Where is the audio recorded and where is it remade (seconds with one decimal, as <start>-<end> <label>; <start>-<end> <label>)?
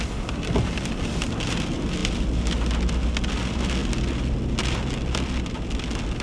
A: 0.0-6.2 recorded